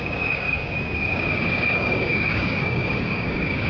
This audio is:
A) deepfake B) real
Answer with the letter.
A